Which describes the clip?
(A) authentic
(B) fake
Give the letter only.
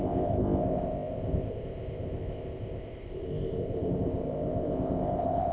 B